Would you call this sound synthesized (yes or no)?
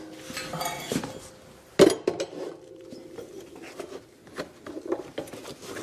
no